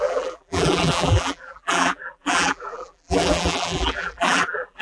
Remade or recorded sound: remade